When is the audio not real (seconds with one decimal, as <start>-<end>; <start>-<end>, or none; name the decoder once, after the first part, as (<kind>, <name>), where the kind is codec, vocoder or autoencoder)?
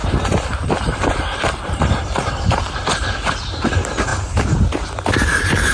0.0-3.1 (vocoder, BigVGAN v2)